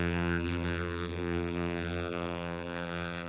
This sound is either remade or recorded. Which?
remade